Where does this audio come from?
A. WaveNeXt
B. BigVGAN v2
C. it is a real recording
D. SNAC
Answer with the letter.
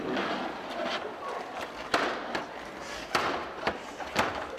C